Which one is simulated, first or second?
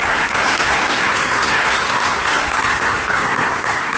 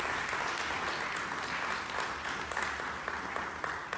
first